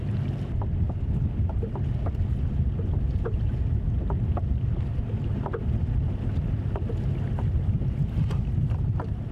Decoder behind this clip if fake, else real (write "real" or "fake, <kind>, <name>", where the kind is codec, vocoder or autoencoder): real